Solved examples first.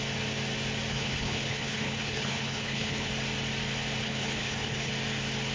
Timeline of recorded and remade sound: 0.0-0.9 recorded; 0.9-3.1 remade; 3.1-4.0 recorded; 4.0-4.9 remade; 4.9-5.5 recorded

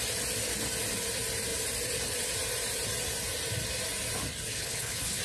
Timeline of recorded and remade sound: 0.0-4.5 recorded; 4.5-5.2 remade

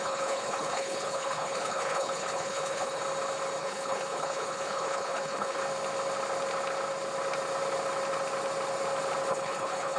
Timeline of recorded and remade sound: 0.0-3.0 remade; 3.0-3.6 recorded; 3.6-5.6 remade; 5.6-9.3 recorded; 9.3-10.0 remade

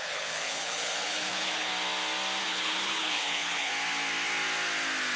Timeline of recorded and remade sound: 0.0-1.7 remade; 1.7-2.4 recorded; 2.4-3.7 remade; 3.7-5.2 recorded

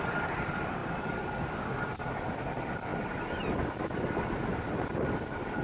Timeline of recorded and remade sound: 0.0-5.6 recorded

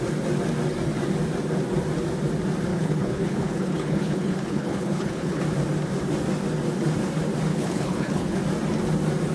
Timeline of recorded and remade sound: 0.0-2.7 recorded; 2.7-5.4 remade; 5.4-7.5 recorded; 7.5-8.4 remade; 8.4-9.3 recorded

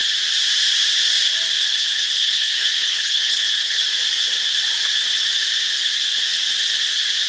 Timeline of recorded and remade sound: 0.0-1.7 recorded; 1.7-3.8 remade; 3.8-7.3 recorded